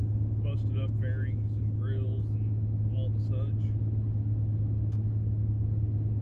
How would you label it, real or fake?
real